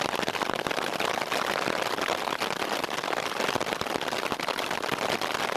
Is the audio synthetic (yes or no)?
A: no